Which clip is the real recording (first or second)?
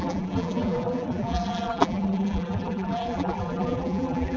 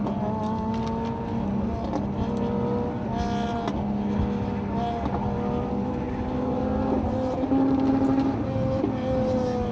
second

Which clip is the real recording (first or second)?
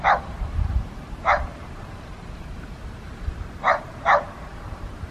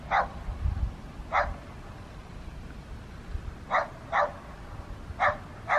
second